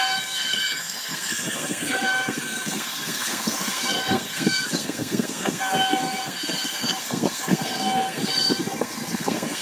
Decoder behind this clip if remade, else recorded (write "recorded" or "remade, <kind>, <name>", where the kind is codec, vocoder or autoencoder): remade, codec, SNAC